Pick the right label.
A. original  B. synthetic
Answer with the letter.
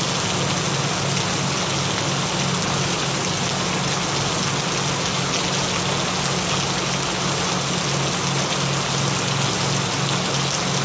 A